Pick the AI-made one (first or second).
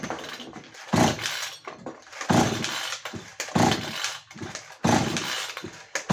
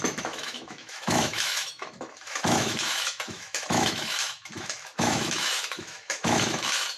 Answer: second